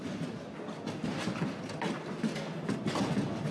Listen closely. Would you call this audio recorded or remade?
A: recorded